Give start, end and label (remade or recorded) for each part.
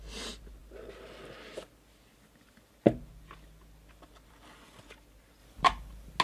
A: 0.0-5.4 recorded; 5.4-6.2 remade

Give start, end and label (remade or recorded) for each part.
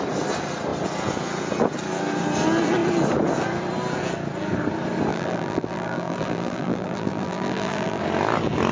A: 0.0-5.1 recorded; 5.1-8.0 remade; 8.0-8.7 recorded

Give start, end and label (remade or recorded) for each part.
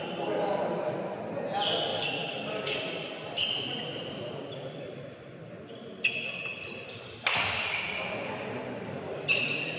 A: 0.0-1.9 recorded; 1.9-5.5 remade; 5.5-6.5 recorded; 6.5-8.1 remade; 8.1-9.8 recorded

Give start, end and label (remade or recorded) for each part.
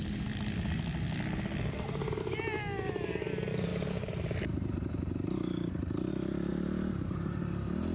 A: 0.0-3.7 recorded; 3.7-6.1 remade; 6.1-6.5 recorded; 6.5-7.4 remade; 7.4-7.9 recorded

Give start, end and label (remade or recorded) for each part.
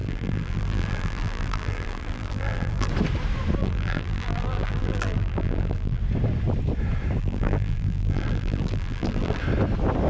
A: 0.0-2.9 remade; 2.9-3.6 recorded; 3.6-6.0 remade; 6.0-7.2 recorded; 7.2-9.4 remade; 9.4-10.1 recorded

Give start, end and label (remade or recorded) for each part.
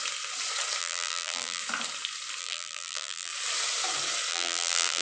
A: 0.0-0.8 recorded; 0.8-1.6 remade; 1.6-2.4 recorded; 2.4-3.3 remade; 3.3-4.3 recorded; 4.3-5.0 remade